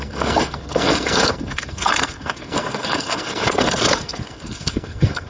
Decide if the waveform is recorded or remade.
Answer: remade